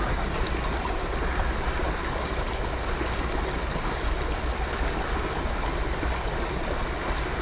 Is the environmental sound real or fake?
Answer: real